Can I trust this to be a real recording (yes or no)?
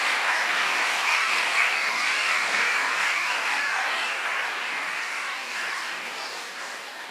no